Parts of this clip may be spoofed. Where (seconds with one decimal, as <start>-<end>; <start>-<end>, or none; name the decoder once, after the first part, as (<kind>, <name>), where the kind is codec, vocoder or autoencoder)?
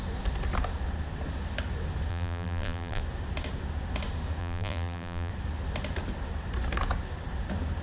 2.1-3.0 (vocoder, BigVGAN v2); 4.4-5.3